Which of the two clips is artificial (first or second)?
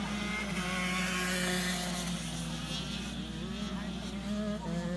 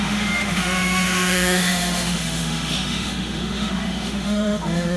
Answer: second